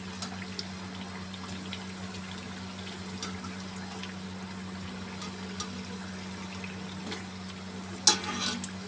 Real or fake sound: real